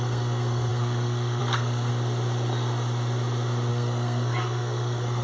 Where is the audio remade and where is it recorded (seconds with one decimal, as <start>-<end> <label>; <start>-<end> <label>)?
0.0-1.9 remade; 1.9-3.7 recorded; 3.7-5.2 remade